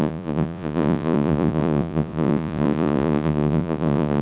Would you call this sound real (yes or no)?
no